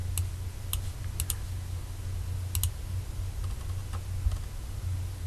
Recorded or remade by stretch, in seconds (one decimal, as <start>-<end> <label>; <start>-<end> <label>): 0.0-5.3 recorded